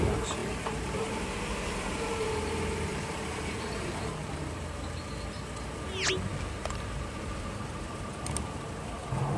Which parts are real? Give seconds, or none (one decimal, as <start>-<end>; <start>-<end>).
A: 0.0-0.4; 2.3-2.9; 5.1-6.3; 8.4-9.4